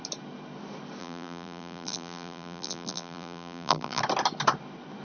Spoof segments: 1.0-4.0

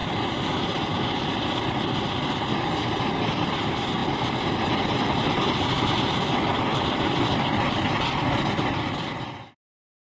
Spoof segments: none

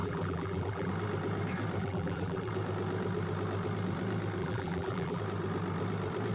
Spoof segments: 0.0-0.9; 1.8-2.5; 4.4-5.2

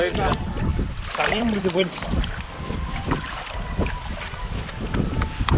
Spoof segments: 0.7-4.1